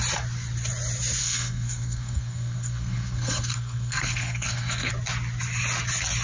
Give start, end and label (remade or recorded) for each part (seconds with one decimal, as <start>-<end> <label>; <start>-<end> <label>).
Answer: 0.0-1.2 recorded; 1.2-4.9 remade; 4.9-6.2 recorded